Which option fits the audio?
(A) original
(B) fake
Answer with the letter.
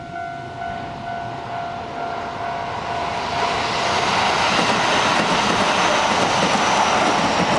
A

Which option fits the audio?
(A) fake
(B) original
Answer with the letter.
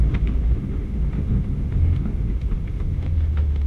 A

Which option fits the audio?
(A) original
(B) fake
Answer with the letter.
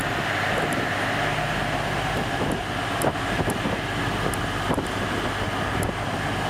A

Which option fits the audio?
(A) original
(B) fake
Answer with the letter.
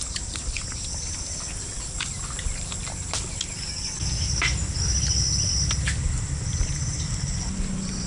A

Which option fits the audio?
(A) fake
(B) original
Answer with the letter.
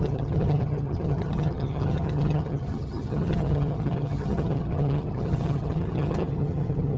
A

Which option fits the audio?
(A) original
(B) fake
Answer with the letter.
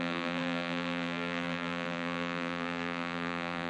B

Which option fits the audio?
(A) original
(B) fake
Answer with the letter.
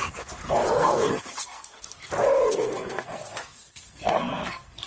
B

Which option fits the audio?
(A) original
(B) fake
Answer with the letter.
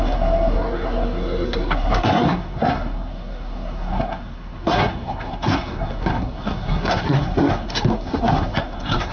B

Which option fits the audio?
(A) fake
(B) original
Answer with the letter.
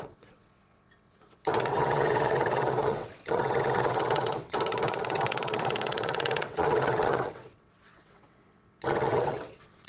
A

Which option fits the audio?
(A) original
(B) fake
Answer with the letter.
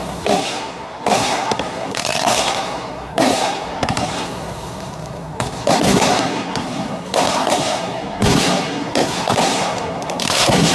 B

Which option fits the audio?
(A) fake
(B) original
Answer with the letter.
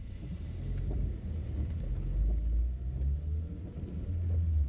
B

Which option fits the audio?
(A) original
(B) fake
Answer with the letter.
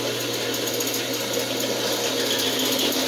A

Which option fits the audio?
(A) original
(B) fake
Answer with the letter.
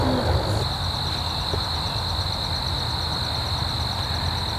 A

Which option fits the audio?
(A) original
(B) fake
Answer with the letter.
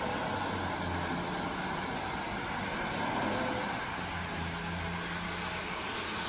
A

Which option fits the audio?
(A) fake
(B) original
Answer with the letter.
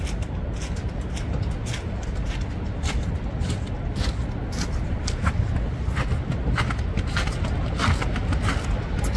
B